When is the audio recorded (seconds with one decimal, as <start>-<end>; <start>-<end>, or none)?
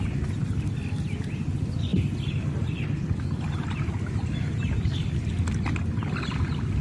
0.0-1.9; 5.4-6.8